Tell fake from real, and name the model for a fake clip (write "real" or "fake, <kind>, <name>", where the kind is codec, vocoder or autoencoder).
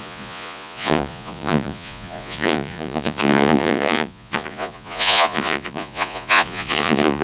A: fake, vocoder, Vocos